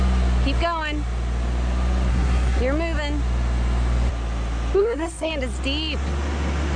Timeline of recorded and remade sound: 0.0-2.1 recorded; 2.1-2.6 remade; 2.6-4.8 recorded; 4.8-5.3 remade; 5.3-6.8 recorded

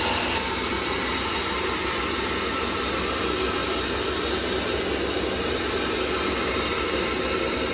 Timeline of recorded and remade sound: 0.0-7.7 recorded

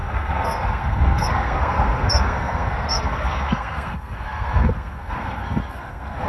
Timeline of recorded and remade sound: 0.0-6.3 remade

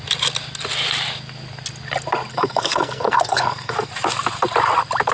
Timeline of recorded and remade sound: 0.0-2.3 recorded; 2.3-3.9 remade; 3.9-5.1 recorded

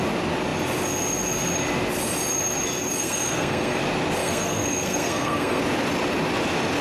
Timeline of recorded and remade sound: 0.0-3.0 recorded; 3.0-3.8 remade; 3.8-4.2 recorded; 4.2-5.6 remade; 5.6-6.8 recorded

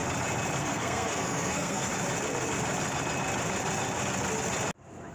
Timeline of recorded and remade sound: 0.0-0.6 recorded; 0.6-1.9 remade; 1.9-5.1 recorded

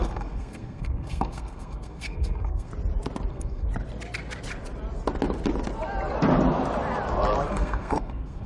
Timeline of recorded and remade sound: 0.0-2.7 remade; 2.7-3.3 recorded; 3.3-3.7 remade; 3.7-7.5 recorded; 7.5-8.5 remade

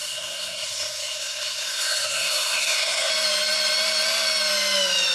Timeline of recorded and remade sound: 0.0-3.1 remade; 3.1-5.1 recorded